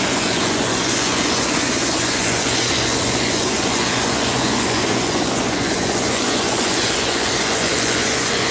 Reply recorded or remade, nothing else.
remade